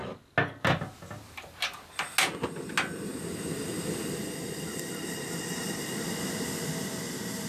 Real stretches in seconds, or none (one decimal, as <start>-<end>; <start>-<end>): 0.0-7.5